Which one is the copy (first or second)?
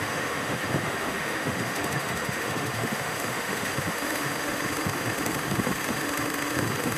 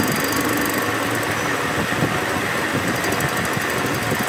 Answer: first